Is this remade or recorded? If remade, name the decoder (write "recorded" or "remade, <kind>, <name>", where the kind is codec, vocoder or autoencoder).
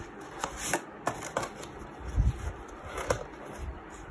recorded